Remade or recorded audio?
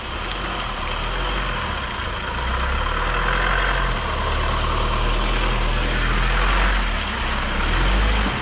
recorded